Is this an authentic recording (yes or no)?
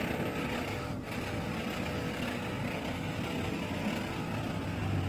yes